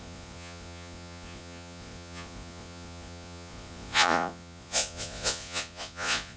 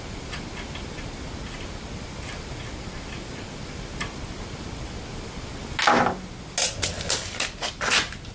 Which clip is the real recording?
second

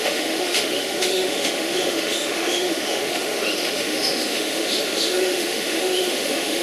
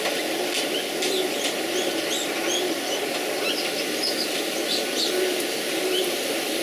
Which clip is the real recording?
second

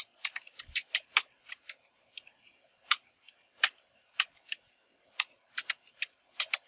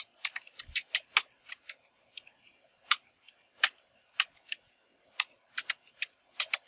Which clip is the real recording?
second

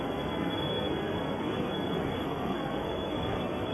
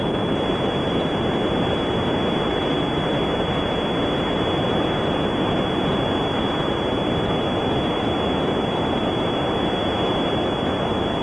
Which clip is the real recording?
second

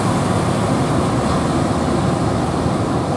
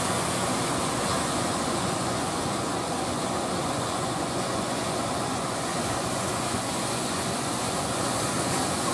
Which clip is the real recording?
first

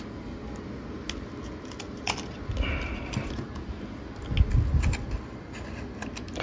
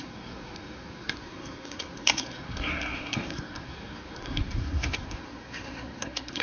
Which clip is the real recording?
first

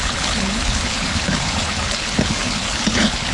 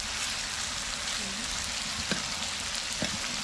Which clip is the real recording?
second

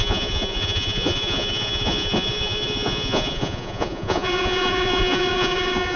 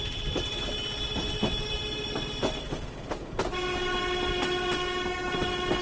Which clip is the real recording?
second